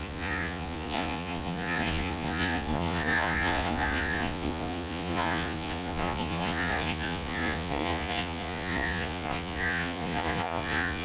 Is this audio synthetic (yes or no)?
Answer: yes